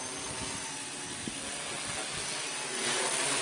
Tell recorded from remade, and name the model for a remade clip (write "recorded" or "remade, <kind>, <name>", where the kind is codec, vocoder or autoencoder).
recorded